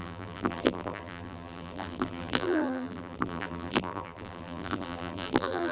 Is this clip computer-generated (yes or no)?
yes